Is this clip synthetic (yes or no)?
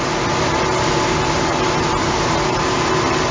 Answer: no